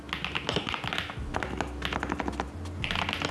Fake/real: real